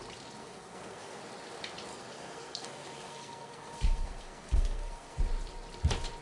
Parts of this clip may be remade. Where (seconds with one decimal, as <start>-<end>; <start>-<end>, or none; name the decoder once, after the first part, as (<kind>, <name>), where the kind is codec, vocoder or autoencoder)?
0.4-1.2 (codec, SNAC); 1.9-5.2